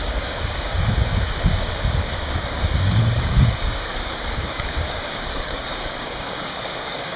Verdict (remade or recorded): remade